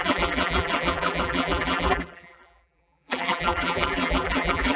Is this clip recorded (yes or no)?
no